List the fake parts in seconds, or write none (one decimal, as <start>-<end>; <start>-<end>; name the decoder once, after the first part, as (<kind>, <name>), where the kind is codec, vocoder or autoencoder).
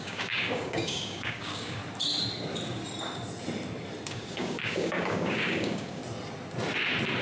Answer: 0.0-1.8 (codec, DAC); 4.1-6.0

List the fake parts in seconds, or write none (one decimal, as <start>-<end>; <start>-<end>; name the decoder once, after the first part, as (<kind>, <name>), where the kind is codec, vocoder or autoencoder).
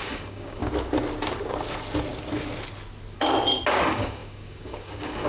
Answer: 0.0-0.6 (codec, DAC); 3.8-5.3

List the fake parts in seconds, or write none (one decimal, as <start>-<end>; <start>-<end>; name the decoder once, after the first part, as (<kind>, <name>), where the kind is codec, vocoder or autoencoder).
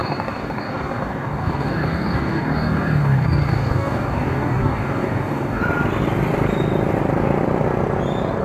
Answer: 0.0-5.6 (codec, DAC)